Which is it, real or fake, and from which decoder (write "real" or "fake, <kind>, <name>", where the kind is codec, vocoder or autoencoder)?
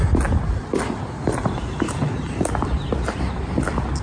real